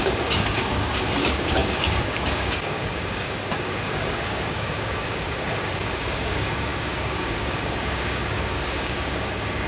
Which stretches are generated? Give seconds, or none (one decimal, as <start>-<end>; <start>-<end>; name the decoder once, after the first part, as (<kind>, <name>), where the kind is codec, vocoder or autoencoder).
0.0-9.7 (codec, DAC)